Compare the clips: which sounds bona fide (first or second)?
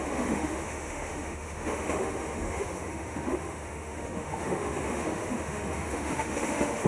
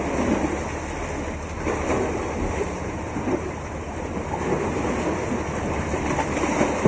second